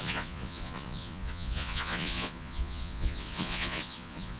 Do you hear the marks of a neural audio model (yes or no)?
yes